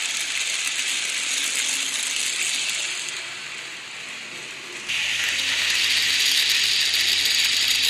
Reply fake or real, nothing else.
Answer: real